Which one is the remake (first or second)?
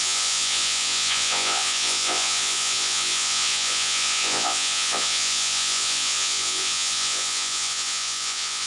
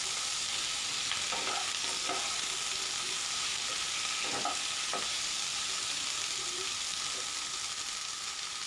first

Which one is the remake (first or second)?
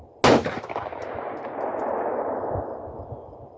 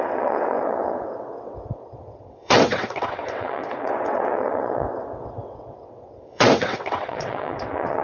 second